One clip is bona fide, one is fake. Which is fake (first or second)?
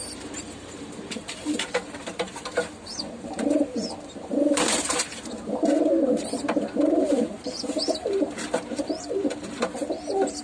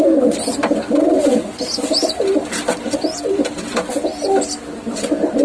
first